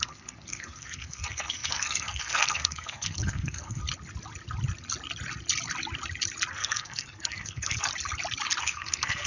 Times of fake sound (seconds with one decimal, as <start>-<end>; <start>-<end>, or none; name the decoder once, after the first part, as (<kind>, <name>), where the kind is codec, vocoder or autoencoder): 0.0-3.8 (codec, SNAC); 6.5-7.9; 8.6-9.3